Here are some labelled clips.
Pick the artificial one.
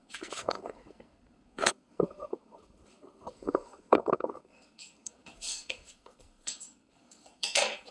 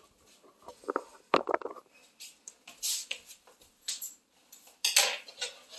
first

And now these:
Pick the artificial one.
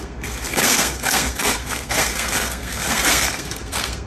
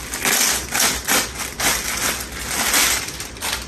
first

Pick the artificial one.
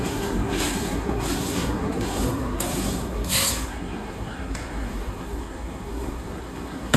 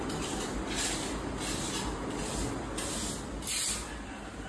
first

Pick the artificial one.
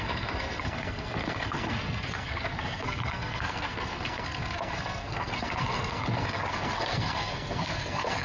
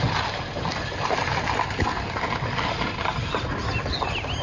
first